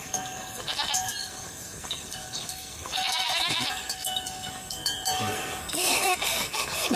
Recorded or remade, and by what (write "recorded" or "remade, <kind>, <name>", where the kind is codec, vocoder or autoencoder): remade, codec, SNAC